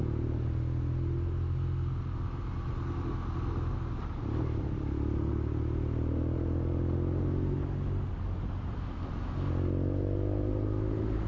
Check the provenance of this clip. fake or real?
real